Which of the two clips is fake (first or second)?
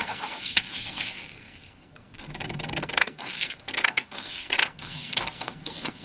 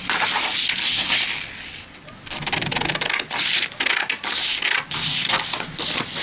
first